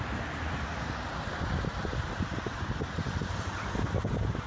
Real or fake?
real